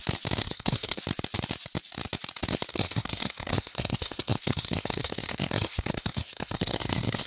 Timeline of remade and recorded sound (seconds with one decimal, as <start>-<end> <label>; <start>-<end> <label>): 0.0-0.4 recorded; 0.4-1.0 remade; 1.0-2.7 recorded; 2.7-7.3 remade